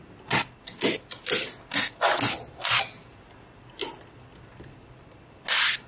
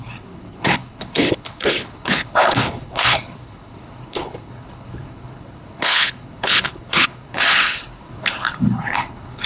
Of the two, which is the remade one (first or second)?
second